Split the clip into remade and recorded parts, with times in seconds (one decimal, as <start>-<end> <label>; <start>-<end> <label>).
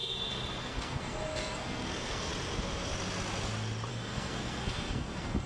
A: 0.0-0.6 recorded; 0.6-2.3 remade; 2.3-3.9 recorded; 3.9-5.5 remade